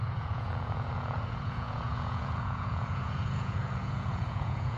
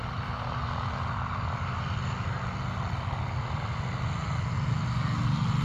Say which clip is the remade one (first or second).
first